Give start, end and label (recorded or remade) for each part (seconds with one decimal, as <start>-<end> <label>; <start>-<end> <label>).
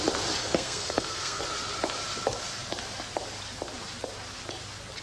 0.0-0.4 recorded; 0.4-1.4 remade; 1.4-5.0 recorded